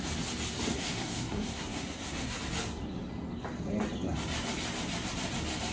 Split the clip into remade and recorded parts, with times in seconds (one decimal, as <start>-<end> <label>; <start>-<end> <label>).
0.0-0.7 recorded; 0.7-2.4 remade; 2.4-5.7 recorded